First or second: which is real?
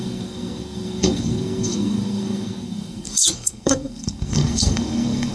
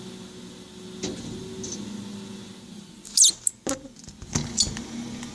second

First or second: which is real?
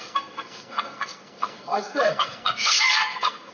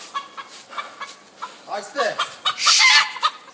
second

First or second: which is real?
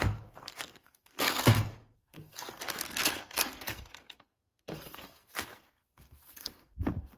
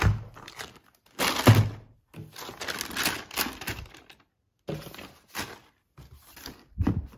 second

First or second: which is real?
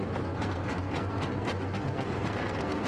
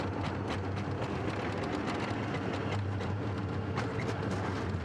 second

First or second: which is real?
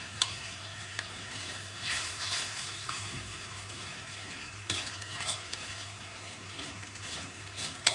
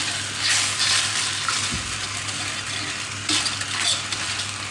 second